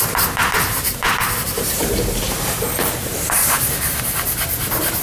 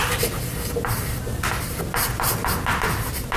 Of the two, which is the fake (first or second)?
first